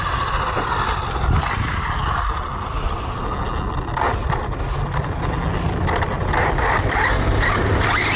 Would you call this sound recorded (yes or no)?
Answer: yes